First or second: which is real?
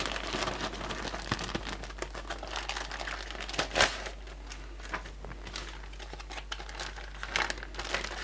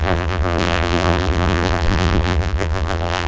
first